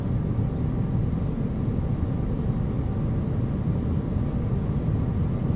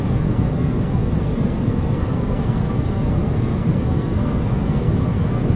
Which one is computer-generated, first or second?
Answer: second